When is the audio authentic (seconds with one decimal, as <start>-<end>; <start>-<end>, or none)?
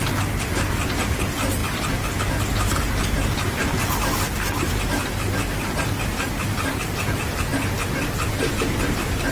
0.0-9.3